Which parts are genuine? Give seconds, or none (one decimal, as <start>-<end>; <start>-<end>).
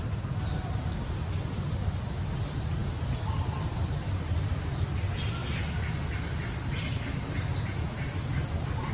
0.0-8.9